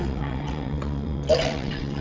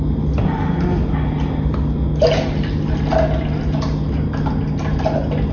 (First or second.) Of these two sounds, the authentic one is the second